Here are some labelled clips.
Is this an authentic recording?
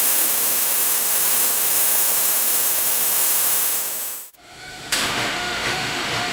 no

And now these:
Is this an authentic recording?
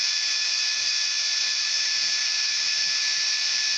no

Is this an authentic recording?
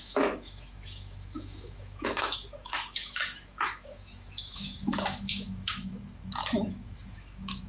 no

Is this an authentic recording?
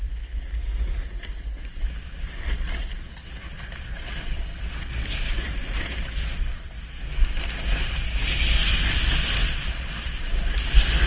yes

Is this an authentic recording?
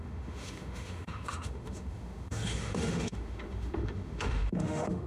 no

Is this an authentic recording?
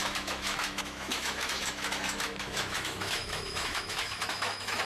no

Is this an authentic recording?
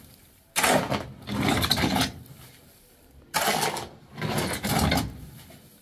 yes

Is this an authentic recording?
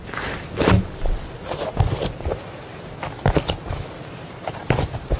yes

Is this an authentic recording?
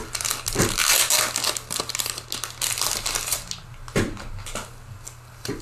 yes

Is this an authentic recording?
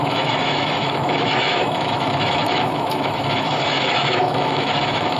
no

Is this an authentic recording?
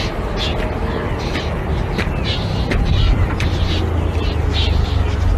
yes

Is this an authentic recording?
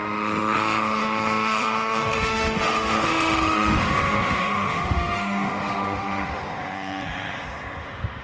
no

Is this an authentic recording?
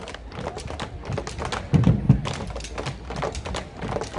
yes